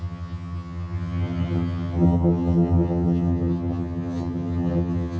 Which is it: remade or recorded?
remade